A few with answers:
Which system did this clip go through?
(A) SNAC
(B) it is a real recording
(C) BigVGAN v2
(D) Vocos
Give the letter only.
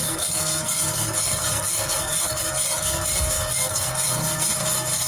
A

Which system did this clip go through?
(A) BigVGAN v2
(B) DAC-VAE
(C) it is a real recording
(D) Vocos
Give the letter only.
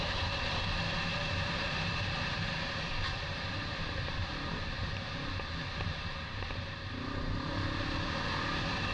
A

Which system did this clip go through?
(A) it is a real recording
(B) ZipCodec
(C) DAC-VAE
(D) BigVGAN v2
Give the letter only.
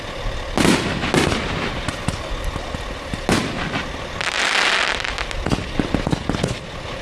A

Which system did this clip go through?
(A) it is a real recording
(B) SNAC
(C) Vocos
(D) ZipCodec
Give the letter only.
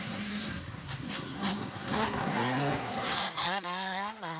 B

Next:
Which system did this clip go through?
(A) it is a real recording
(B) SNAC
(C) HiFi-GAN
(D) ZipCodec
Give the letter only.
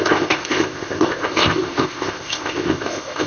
D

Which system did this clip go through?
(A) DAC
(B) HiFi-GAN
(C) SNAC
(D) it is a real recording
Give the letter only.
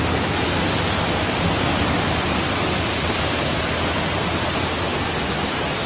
D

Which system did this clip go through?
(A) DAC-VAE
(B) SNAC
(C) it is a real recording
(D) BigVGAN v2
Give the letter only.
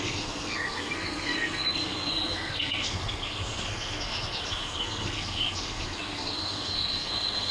B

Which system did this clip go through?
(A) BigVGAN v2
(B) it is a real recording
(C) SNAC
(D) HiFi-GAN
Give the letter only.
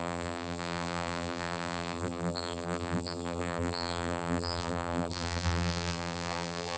A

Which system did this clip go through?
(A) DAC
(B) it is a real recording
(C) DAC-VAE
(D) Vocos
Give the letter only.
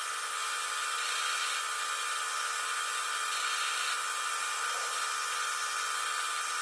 B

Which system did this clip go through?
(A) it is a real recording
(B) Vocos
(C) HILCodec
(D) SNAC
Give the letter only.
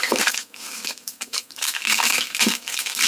D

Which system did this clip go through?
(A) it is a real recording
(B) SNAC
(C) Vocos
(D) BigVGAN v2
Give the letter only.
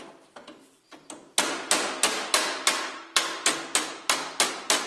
A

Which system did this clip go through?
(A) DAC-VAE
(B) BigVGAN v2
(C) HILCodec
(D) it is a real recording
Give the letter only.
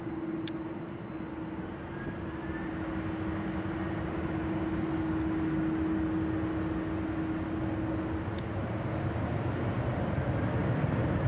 D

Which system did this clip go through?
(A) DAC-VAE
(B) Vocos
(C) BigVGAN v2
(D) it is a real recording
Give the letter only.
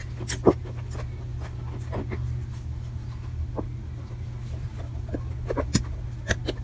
D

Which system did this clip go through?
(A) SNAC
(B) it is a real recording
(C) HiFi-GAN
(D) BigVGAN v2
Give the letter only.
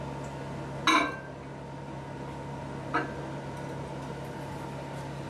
B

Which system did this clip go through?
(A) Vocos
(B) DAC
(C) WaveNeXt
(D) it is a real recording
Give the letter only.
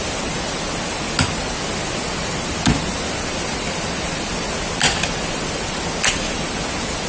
D